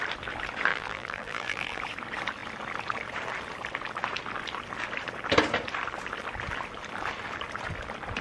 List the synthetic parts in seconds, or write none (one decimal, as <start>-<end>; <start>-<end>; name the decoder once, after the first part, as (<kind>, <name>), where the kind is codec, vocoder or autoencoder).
0.7-1.8 (vocoder, BigVGAN v2)

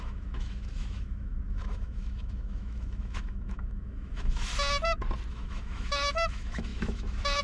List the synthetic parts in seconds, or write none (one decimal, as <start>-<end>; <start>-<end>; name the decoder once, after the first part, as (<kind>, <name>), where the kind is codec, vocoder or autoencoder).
0.0-4.5 (autoencoder, DAC-VAE); 5.3-7.4

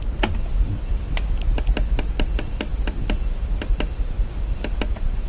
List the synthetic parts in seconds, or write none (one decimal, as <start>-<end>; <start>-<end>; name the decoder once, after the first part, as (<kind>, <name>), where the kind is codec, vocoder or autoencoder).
none

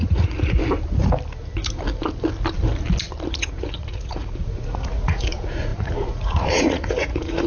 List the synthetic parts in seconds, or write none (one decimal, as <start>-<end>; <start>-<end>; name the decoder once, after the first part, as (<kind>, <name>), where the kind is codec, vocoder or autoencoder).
0.0-0.6 (vocoder, Vocos); 3.3-7.5

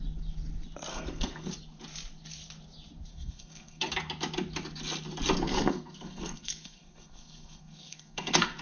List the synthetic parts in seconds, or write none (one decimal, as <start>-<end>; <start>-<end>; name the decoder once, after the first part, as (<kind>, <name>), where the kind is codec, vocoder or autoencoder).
0.9-1.5 (codec, SNAC); 3.1-3.9; 5.4-8.6

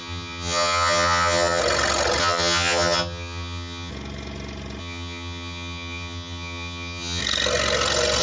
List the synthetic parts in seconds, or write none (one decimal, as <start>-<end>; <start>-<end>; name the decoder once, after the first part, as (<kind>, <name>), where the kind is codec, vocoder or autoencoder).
0.0-1.6 (vocoder, HiFi-GAN); 2.2-3.9; 4.8-7.2

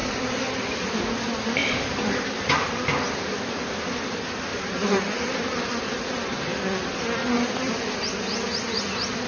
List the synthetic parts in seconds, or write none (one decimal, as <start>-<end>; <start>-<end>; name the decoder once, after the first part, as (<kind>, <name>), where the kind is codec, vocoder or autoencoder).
1.6-2.5 (vocoder, BigVGAN v2); 4.5-5.6

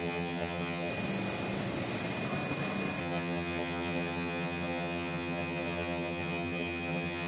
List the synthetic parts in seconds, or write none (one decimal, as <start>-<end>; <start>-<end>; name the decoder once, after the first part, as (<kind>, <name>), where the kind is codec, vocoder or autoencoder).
0.0-0.9 (vocoder, HiFi-GAN); 3.0-7.3